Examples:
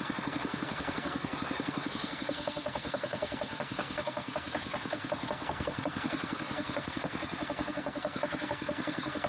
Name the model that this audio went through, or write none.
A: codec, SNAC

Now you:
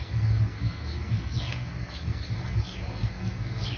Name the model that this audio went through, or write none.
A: codec, SNAC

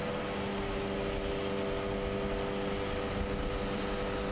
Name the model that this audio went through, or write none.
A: none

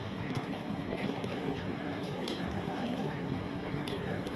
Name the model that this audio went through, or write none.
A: codec, SNAC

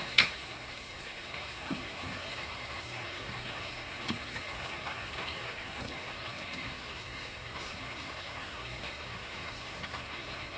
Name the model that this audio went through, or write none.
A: codec, SNAC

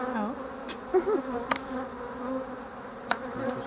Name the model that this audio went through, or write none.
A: none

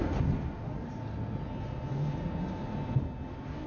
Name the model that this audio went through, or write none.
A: none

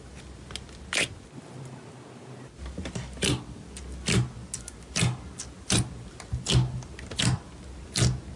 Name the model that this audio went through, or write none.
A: none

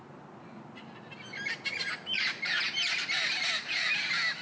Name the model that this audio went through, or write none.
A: none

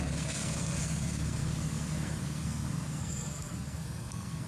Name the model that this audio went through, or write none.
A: codec, SNAC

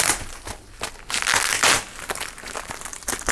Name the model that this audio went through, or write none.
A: none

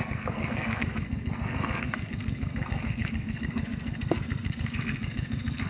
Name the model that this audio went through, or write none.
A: codec, SNAC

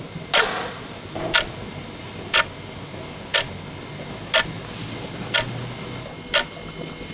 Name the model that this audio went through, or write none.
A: none